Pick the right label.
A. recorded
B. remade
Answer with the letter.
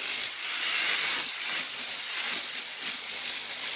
A